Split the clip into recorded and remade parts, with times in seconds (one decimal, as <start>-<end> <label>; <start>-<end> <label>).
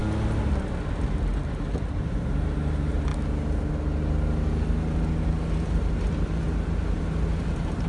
0.0-7.9 recorded